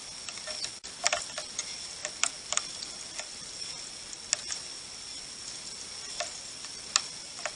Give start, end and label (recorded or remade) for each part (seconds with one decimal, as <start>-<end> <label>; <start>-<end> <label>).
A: 0.0-7.6 recorded